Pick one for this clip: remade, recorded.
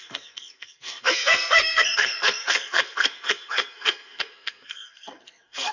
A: remade